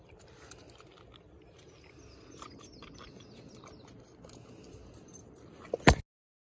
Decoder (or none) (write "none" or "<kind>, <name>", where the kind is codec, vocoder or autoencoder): none